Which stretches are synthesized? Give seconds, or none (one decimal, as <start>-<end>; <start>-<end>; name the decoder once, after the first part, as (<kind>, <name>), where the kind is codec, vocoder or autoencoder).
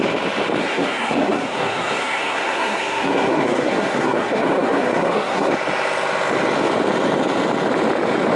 0.6-5.5 (codec, SNAC)